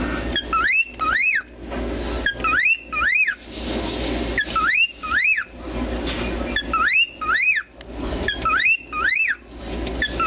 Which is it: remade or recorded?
recorded